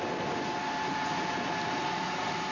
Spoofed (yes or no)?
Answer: no